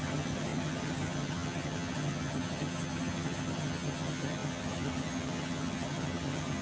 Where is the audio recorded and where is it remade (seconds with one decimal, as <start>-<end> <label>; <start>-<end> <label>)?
0.0-6.6 remade